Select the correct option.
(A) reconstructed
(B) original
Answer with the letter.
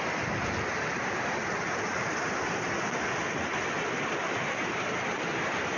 B